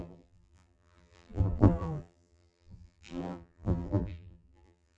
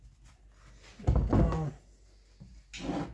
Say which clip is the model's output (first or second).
first